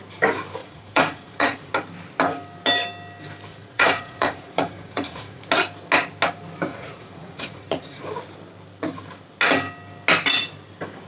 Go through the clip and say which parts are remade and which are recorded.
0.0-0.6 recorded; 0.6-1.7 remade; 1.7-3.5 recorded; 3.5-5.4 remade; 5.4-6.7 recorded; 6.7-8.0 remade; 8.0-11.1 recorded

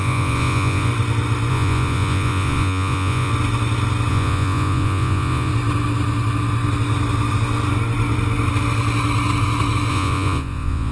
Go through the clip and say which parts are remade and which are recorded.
0.0-0.9 remade; 0.9-1.5 recorded; 1.5-3.3 remade; 3.3-4.1 recorded; 4.1-5.5 remade; 5.5-9.9 recorded; 9.9-10.9 remade

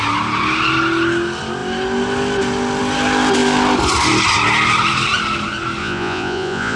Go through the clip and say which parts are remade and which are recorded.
0.0-5.8 recorded; 5.8-6.8 remade

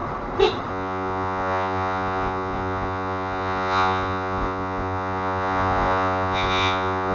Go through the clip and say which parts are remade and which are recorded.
0.0-0.7 recorded; 0.7-7.1 remade

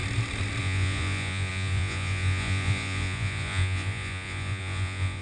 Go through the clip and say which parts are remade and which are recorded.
0.0-0.6 recorded; 0.6-5.2 remade

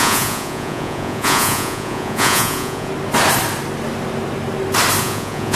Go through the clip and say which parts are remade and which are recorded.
0.0-2.9 remade; 2.9-5.0 recorded; 5.0-5.6 remade